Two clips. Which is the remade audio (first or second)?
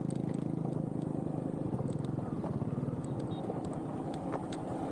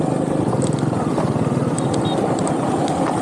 second